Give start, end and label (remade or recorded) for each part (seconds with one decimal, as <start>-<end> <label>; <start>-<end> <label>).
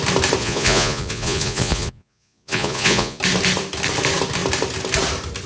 0.0-0.4 recorded; 0.4-3.2 remade; 3.2-5.5 recorded